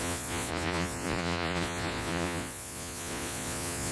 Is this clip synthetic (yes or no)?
yes